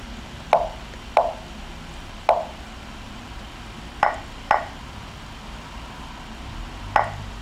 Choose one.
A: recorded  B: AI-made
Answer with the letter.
B